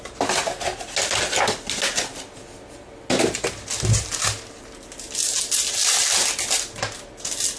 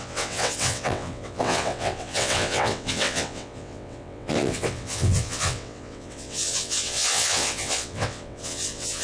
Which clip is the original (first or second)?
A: first